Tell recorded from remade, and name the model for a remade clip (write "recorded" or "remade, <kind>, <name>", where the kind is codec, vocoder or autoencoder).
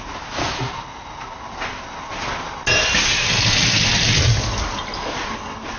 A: recorded